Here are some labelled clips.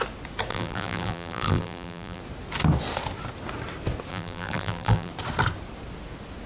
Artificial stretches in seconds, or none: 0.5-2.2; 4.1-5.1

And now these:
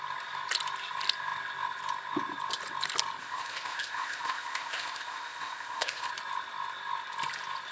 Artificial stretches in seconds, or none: 3.2-6.1

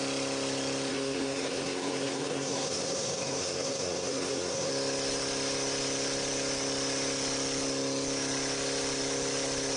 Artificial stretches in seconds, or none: 0.9-4.7

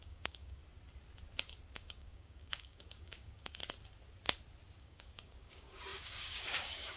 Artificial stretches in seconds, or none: 0.0-0.6; 1.7-3.6; 4.8-7.0

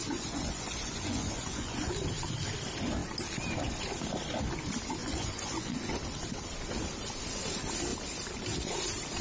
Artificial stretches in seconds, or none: 0.0-1.9; 5.0-5.9

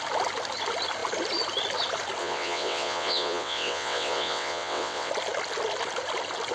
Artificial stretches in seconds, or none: 2.2-5.1